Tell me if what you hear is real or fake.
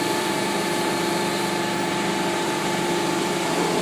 fake